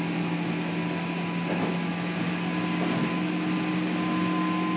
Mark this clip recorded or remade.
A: recorded